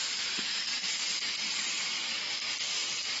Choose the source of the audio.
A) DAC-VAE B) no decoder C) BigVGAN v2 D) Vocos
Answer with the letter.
C